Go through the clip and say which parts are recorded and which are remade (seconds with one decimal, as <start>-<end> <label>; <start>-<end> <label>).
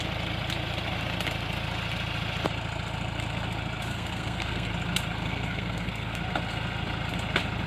0.0-3.9 recorded; 3.9-4.7 remade; 4.7-5.2 recorded; 5.2-6.2 remade; 6.2-7.7 recorded